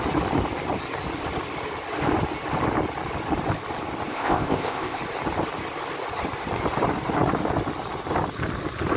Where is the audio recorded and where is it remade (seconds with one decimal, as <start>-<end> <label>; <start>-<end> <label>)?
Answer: 0.0-4.1 recorded; 4.1-5.0 remade; 5.0-9.0 recorded